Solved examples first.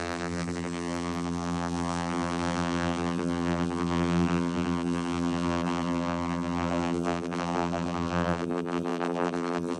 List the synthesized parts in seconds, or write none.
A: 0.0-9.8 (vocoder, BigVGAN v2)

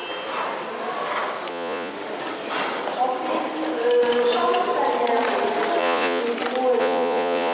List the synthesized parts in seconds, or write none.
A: 1.5-1.9 (vocoder, Vocos); 5.8-6.2; 6.8-7.5

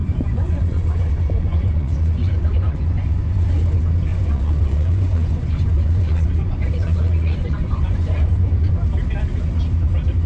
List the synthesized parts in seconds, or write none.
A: 0.0-3.5 (vocoder, Vocos); 4.1-8.7

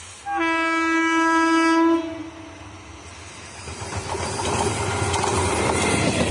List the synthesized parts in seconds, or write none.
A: none

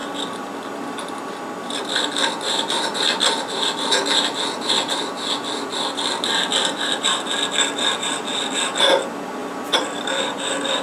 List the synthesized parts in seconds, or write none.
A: none